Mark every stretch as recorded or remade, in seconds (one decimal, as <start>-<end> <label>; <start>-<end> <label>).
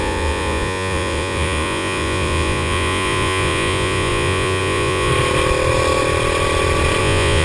0.0-5.1 remade; 5.1-7.0 recorded; 7.0-7.4 remade